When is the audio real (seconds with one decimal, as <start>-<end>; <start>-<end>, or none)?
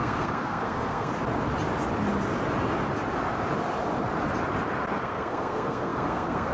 1.1-5.0